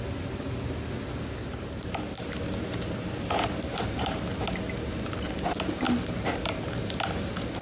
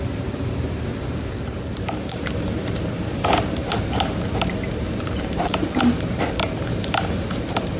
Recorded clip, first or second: first